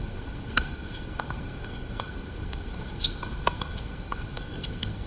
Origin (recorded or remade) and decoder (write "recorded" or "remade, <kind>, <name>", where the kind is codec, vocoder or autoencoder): remade, codec, SNAC